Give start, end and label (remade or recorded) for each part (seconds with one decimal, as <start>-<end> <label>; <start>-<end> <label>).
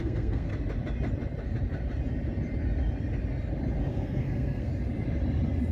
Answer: 0.0-0.5 remade; 0.5-3.9 recorded; 3.9-4.7 remade; 4.7-5.7 recorded